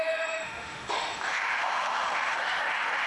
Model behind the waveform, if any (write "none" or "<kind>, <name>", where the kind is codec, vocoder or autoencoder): autoencoder, DAC-VAE